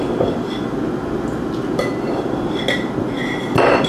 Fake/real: real